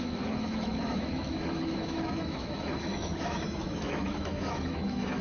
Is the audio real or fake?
fake